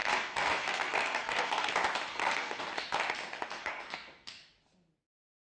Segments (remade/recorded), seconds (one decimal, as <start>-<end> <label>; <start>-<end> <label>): 0.0-1.7 remade; 1.7-2.1 recorded; 2.1-2.6 remade; 2.6-3.6 recorded; 3.6-4.4 remade; 4.4-5.4 recorded